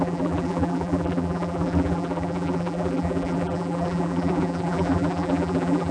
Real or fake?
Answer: fake